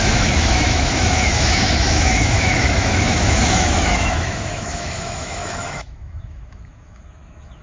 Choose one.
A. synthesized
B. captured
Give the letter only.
A